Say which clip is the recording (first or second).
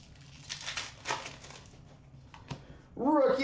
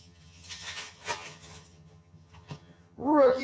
first